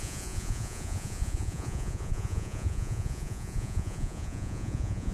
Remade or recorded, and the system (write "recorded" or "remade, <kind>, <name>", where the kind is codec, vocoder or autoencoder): remade, vocoder, Vocos